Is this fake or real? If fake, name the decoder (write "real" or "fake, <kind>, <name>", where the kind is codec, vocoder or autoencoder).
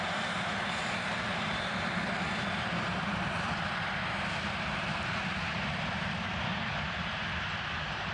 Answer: fake, vocoder, BigVGAN v2